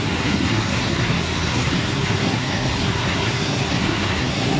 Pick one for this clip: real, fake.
fake